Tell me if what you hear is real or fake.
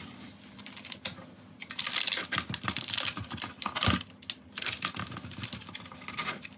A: real